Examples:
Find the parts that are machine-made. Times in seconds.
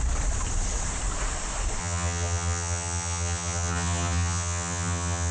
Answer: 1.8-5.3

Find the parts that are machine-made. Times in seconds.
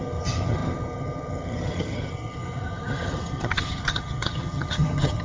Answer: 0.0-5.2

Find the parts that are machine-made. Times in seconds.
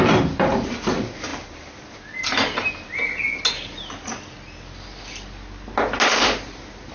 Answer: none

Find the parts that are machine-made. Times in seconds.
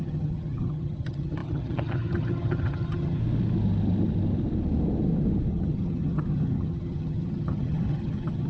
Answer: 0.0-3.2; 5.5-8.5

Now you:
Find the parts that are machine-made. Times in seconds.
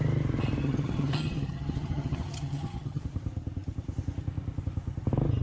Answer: 0.6-3.0